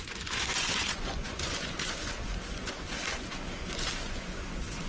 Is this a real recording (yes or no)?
no